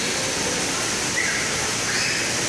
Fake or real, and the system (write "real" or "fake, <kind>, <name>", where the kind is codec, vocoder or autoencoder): real